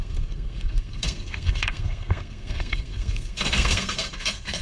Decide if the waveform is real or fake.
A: fake